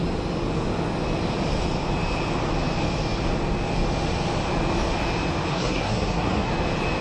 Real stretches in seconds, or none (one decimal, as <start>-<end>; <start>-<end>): 0.0-5.5; 6.5-7.0